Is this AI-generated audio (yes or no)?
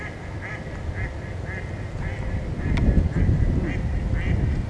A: no